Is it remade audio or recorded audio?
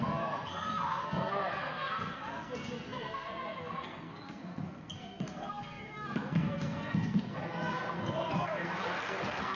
remade